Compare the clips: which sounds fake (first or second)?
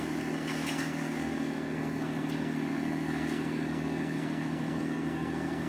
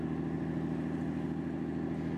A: first